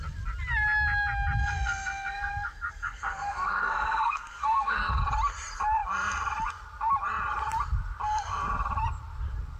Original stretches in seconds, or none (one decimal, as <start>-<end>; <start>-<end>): 0.0-1.4; 5.0-9.6